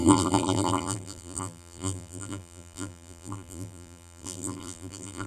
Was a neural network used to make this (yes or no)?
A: yes